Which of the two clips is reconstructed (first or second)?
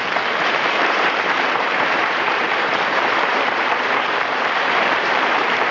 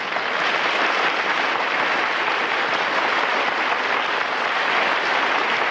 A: first